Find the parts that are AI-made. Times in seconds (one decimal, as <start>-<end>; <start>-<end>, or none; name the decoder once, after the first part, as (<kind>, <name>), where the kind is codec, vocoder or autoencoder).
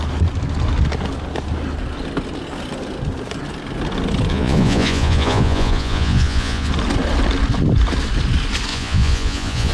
4.3-6.7 (vocoder, Vocos); 8.7-9.7